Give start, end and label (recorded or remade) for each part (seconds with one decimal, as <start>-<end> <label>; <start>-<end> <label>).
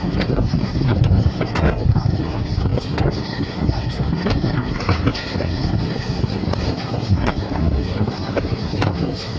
0.0-9.4 remade